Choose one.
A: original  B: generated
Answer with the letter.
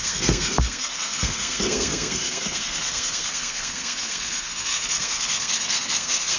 B